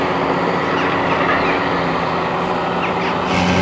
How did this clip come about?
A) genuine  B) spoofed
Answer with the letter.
A